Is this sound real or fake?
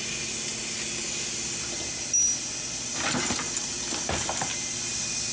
real